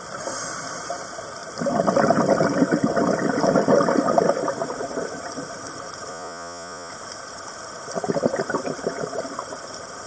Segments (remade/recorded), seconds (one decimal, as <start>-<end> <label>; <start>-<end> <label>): 0.0-6.1 recorded; 6.1-6.9 remade; 6.9-10.1 recorded